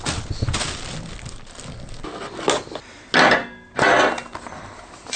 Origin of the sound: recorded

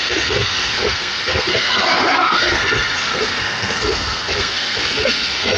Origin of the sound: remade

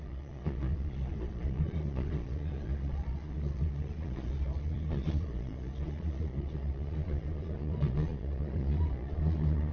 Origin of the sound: remade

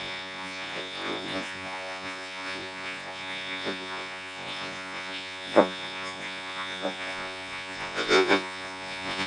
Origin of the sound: remade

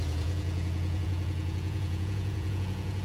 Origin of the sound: remade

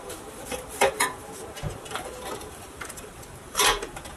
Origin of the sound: remade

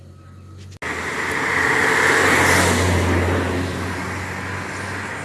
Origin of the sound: recorded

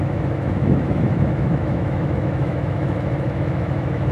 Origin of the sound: remade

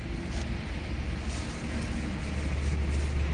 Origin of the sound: recorded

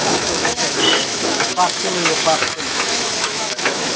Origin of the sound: remade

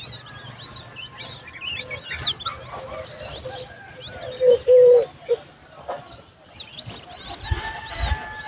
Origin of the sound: recorded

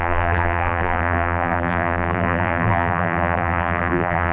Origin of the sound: remade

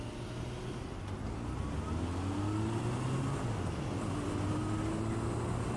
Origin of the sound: recorded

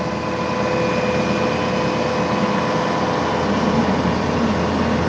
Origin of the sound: recorded